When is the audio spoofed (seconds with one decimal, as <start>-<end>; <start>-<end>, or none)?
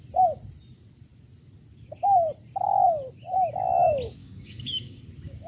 4.2-5.0